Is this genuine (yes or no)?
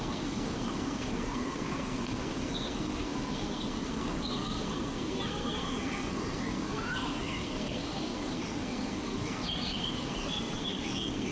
no